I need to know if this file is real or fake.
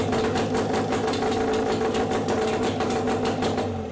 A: real